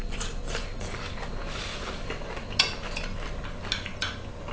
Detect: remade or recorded recorded